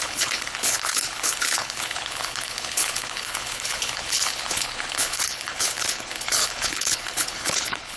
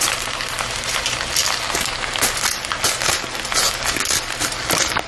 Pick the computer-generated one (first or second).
first